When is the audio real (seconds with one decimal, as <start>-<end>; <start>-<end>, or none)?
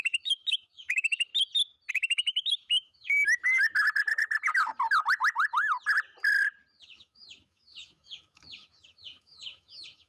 1.3-1.9; 3.4-6.8